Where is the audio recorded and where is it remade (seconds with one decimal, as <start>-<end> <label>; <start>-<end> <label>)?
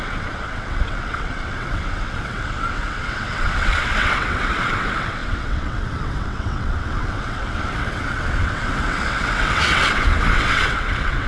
0.0-11.3 remade